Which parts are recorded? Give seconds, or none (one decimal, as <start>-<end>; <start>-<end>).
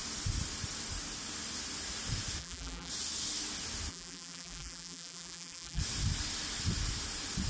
0.0-2.4; 2.9-3.9; 5.8-7.5